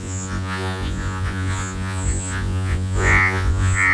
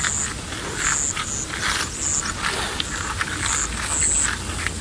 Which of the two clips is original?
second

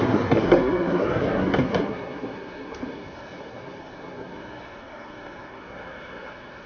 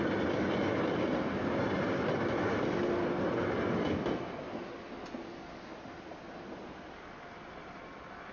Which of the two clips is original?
second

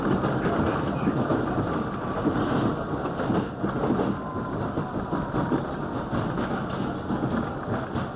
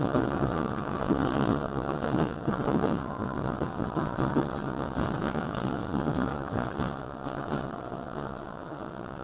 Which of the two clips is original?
first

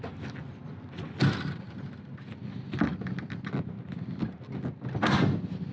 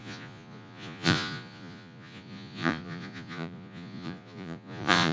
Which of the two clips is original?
first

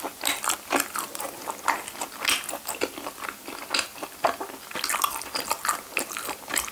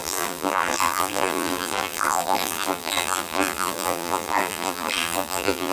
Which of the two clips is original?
first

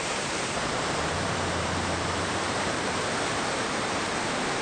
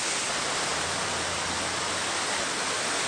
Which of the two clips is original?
second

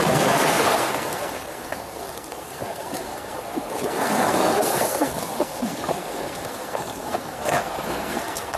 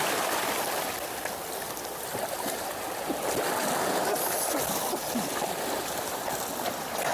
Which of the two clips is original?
second